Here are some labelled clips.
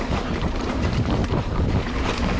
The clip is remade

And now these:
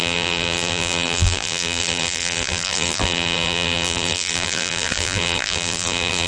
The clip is remade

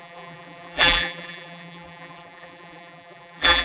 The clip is remade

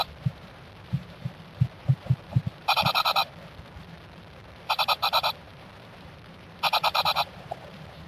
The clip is remade